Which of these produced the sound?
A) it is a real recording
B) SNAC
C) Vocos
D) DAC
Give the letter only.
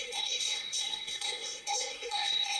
B